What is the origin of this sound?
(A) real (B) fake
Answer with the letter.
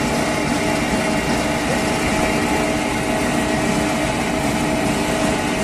A